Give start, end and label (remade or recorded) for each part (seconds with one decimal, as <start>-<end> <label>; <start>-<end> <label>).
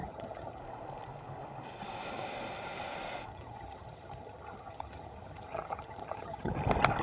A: 0.0-0.6 remade; 0.6-3.3 recorded; 3.3-6.5 remade; 6.5-7.0 recorded